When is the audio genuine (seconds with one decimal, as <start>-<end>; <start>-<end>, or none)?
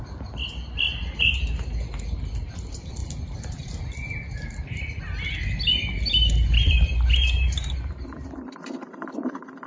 3.0-7.2